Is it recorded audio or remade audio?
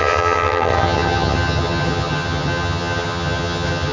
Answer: remade